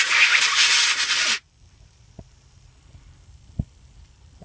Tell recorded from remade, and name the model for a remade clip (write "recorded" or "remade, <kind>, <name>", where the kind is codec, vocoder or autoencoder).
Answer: recorded